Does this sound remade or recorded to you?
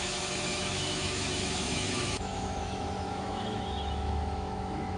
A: remade